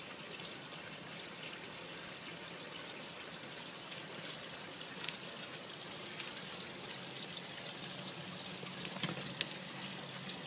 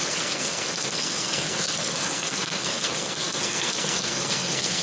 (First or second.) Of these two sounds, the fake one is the second